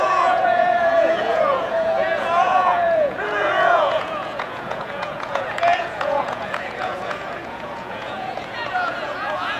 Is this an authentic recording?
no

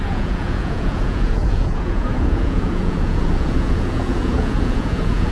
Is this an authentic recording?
no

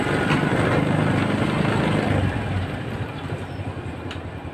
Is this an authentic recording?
yes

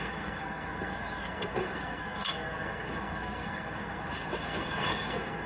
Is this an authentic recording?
no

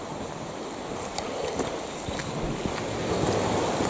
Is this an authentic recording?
yes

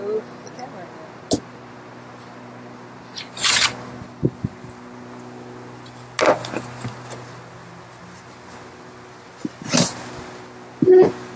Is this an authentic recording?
yes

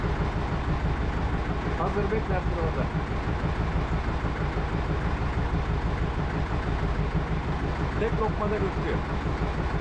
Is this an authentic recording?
yes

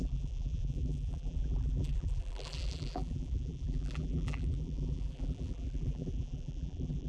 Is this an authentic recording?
no